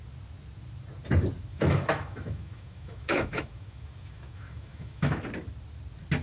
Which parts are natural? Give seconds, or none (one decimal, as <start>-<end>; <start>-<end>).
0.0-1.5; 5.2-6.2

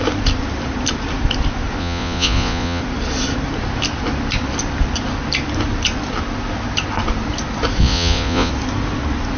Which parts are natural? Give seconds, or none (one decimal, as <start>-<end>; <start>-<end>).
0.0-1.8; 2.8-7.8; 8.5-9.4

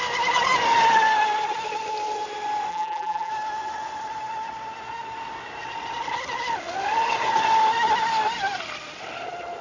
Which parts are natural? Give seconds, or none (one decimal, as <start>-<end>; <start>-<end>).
0.0-2.7; 3.3-9.6